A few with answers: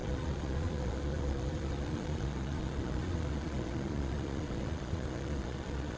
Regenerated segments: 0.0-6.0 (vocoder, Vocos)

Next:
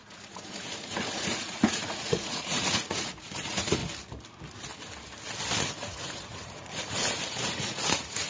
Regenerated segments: 0.0-3.8 (vocoder, Vocos); 5.6-8.3

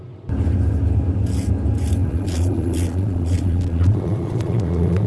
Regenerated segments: 2.0-5.1 (vocoder, Vocos)